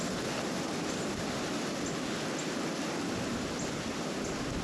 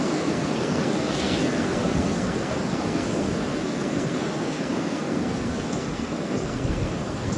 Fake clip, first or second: second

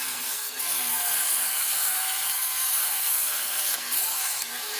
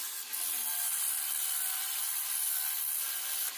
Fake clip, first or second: first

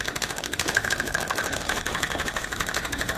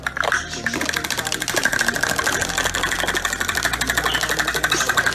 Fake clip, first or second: first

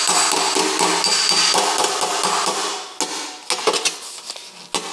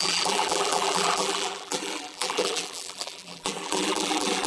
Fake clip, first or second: second